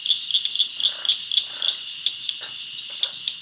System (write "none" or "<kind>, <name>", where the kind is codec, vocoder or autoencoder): none